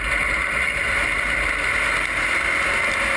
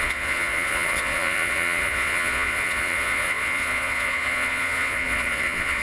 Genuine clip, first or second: first